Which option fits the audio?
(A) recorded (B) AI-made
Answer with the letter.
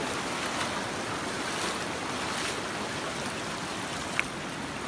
A